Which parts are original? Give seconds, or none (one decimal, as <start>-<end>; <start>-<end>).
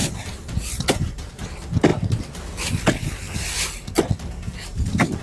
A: 1.3-1.9